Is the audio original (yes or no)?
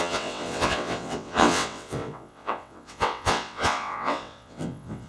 no